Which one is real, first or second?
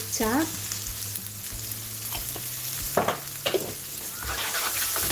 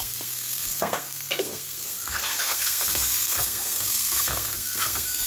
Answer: first